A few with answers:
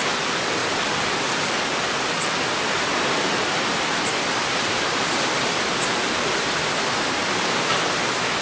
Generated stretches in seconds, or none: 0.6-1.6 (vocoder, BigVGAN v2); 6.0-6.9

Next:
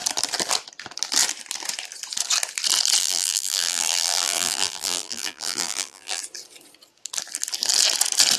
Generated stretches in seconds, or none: 3.0-6.2 (vocoder, BigVGAN v2)

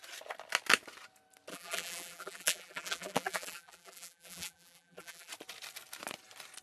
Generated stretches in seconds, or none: 1.5-5.3 (vocoder, BigVGAN v2)

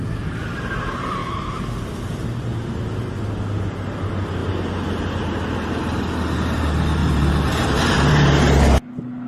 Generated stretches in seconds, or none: 1.2-3.2 (vocoder, BigVGAN v2); 7.0-7.8